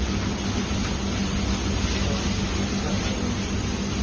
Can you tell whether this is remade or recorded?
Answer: recorded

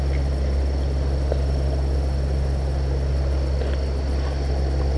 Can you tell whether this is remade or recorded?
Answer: recorded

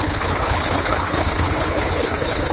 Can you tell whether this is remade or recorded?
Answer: remade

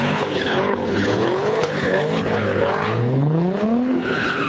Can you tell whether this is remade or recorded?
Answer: remade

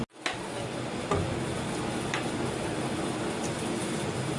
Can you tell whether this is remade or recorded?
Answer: recorded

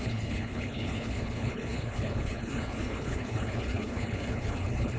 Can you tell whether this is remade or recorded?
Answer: remade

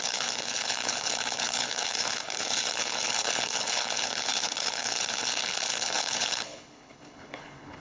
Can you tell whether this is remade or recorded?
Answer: remade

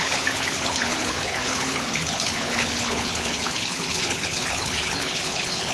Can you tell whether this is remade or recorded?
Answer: remade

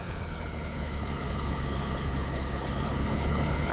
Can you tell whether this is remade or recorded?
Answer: remade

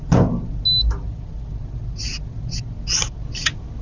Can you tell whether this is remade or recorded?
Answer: recorded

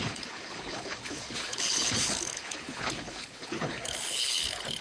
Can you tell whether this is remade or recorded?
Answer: remade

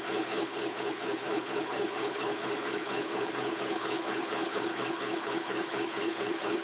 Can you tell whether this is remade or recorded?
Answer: remade